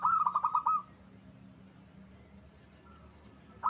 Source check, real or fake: real